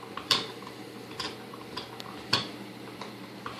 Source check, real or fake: fake